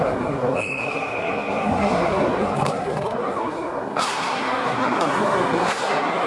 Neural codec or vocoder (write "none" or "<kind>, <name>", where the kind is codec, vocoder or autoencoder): codec, SNAC